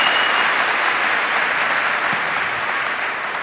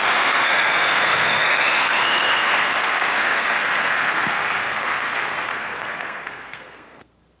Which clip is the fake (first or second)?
second